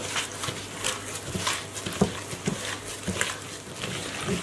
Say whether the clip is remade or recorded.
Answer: recorded